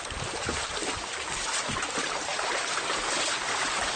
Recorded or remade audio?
recorded